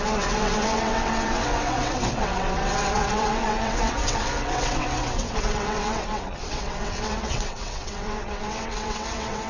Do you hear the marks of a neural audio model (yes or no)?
yes